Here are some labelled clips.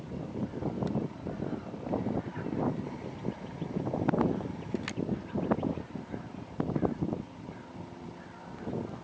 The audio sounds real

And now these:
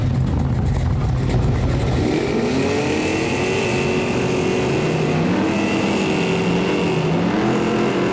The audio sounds real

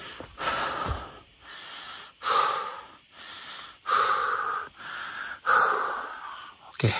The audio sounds real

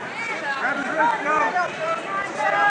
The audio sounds fake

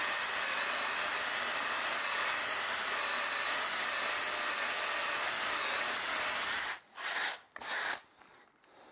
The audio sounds real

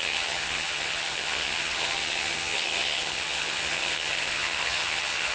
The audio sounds fake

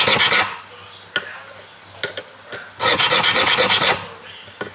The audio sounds real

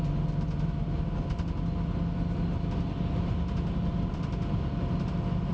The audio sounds real